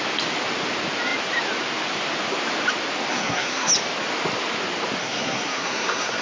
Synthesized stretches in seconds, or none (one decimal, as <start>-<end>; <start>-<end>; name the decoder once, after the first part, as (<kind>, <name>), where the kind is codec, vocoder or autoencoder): 3.1-3.7 (codec, SNAC); 5.0-6.2